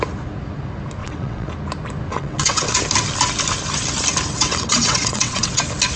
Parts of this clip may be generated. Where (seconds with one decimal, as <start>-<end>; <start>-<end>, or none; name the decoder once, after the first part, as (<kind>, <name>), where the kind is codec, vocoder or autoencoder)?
1.0-1.5 (vocoder, WaveNeXt); 2.1-2.8; 4.3-5.6